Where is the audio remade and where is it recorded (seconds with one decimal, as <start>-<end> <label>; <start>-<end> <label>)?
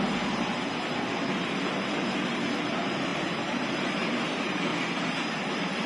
0.0-0.5 remade; 0.5-2.7 recorded; 2.7-4.7 remade; 4.7-5.5 recorded; 5.5-5.9 remade